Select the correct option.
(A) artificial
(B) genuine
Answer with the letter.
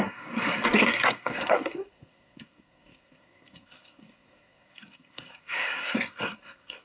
A